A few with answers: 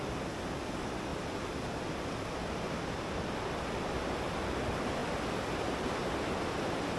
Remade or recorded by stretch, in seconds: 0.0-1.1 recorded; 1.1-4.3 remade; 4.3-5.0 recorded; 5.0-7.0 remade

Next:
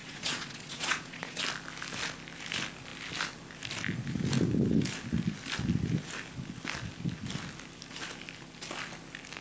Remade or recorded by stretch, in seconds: 0.0-1.4 remade; 1.4-9.4 recorded

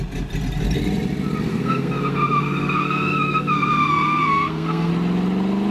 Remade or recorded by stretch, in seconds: 0.0-1.5 recorded; 1.5-4.9 remade; 4.9-5.7 recorded

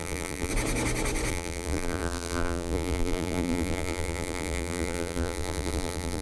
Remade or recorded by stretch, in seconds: 0.0-0.5 remade; 0.5-1.3 recorded; 1.3-6.2 remade

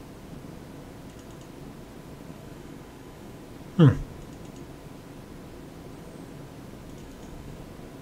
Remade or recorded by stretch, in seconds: 0.0-2.3 recorded; 2.3-3.4 remade; 3.4-7.0 recorded; 7.0-7.6 remade; 7.6-8.0 recorded

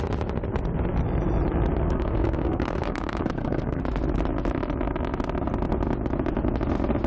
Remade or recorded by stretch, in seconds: 0.0-1.8 recorded; 1.8-3.8 remade; 3.8-7.1 recorded

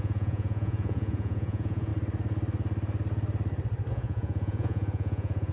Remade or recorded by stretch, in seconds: 0.0-1.9 remade; 1.9-3.9 recorded; 3.9-5.5 remade

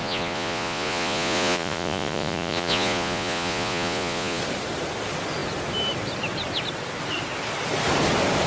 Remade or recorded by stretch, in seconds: 0.0-4.4 remade; 4.4-8.5 recorded